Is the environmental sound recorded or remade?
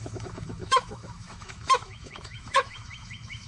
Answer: remade